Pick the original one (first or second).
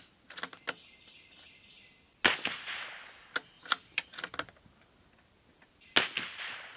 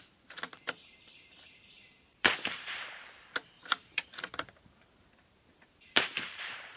first